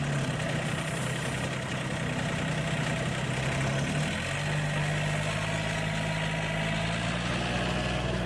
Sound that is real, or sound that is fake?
real